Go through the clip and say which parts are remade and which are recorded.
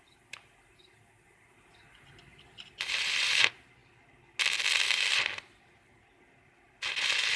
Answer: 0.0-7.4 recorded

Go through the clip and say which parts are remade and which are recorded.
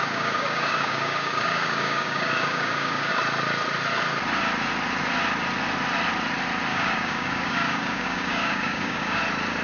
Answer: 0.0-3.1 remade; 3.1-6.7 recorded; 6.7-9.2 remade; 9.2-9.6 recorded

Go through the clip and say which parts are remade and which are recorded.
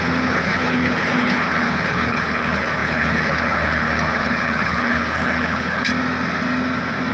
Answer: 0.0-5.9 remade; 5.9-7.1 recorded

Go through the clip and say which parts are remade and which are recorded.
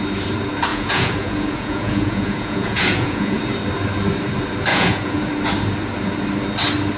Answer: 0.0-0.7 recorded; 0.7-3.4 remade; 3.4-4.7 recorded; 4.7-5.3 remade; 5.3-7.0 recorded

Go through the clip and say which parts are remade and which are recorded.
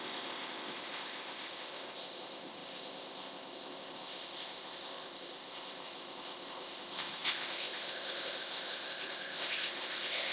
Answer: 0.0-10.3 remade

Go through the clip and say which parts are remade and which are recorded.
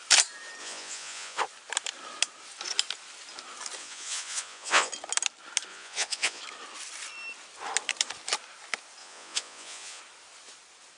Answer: 0.0-0.6 recorded; 0.6-1.4 remade; 1.4-3.8 recorded; 3.8-4.9 remade; 4.9-5.7 recorded; 5.7-6.4 remade; 6.4-9.0 recorded; 9.0-10.0 remade; 10.0-11.0 recorded